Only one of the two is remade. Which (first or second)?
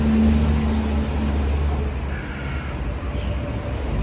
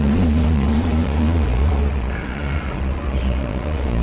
second